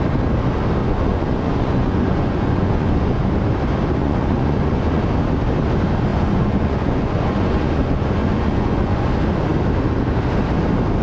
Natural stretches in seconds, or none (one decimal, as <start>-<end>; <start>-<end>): 0.0-0.8; 3.2-4.0; 5.0-6.1; 9.1-11.0